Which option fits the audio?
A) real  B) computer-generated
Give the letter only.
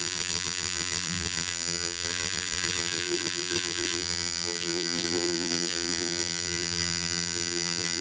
B